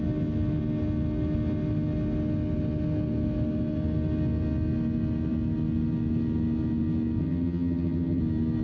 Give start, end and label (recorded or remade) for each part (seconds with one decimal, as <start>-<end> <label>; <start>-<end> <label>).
0.0-7.2 recorded; 7.2-8.2 remade; 8.2-8.6 recorded